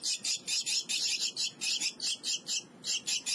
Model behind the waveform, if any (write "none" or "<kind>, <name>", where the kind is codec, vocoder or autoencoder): none